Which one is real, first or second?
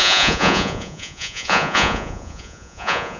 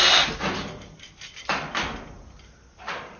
second